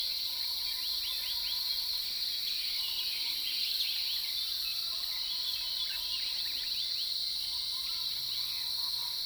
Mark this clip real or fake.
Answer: real